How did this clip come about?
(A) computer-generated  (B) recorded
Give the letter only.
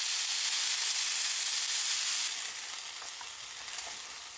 B